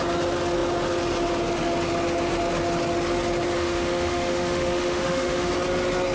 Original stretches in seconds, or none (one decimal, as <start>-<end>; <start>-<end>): 0.0-3.6; 5.5-6.1